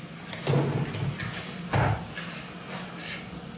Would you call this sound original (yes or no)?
yes